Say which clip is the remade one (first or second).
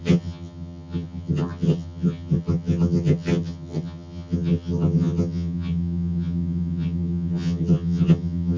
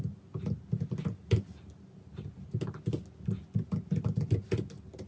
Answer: first